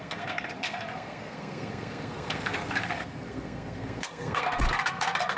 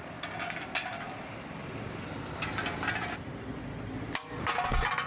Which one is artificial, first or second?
first